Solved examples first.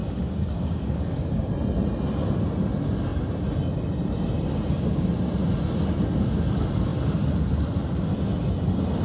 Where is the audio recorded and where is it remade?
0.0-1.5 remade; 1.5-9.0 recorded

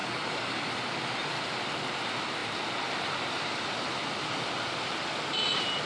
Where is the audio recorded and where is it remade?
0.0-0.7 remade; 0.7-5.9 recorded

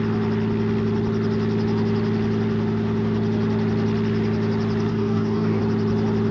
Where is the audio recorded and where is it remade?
0.0-4.9 recorded; 4.9-5.6 remade; 5.6-6.3 recorded